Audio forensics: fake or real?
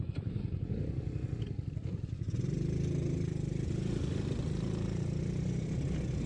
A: real